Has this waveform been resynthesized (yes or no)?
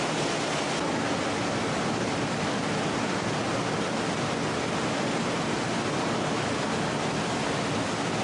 no